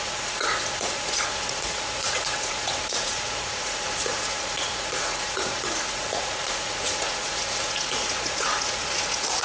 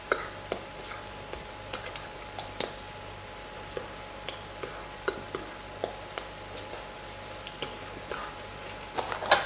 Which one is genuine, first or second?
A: second